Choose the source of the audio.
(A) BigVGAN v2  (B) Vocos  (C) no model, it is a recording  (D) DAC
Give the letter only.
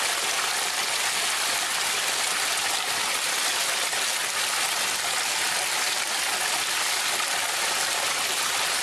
C